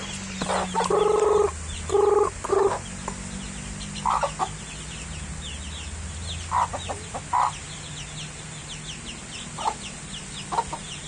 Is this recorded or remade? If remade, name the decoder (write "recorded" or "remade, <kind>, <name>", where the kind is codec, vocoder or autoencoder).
recorded